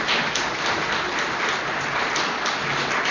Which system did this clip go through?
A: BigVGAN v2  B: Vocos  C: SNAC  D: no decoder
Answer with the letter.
D